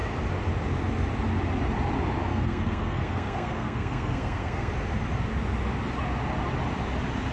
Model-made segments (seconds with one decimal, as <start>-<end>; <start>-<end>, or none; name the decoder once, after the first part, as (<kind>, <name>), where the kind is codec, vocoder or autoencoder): 2.3-4.7 (codec, SNAC)